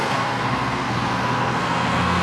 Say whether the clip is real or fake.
fake